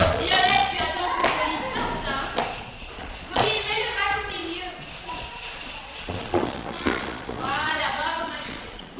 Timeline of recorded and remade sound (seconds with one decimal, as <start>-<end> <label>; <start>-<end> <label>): 0.0-1.2 remade; 1.2-2.6 recorded; 2.6-4.4 remade; 4.4-4.9 recorded; 4.9-9.0 remade